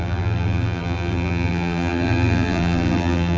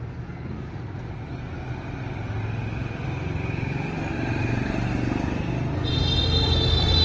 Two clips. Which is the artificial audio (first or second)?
first